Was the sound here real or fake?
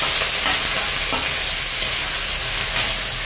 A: real